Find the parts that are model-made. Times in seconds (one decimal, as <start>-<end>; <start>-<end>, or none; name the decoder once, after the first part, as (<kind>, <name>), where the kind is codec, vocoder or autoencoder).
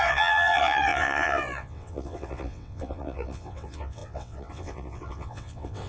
0.0-5.9 (vocoder, WaveNeXt)